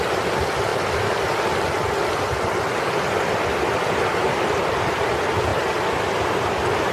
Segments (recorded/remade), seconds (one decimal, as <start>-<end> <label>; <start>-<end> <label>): 0.0-0.7 remade; 0.7-4.8 recorded; 4.8-5.5 remade; 5.5-6.2 recorded; 6.2-6.9 remade